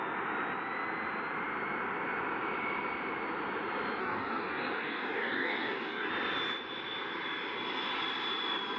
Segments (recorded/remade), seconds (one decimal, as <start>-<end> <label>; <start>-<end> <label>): 0.0-4.0 recorded; 4.0-6.1 remade; 6.1-8.8 recorded